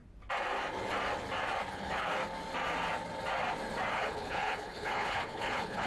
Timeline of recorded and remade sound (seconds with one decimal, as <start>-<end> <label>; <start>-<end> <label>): 0.0-1.7 recorded; 1.7-2.2 remade; 2.2-3.9 recorded; 3.9-5.9 remade